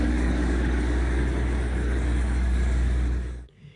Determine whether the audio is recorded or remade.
remade